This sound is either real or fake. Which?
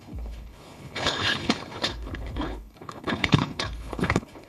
fake